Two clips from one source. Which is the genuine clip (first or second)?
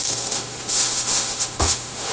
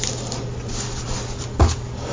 second